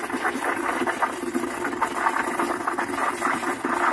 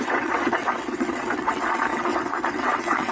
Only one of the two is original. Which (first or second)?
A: first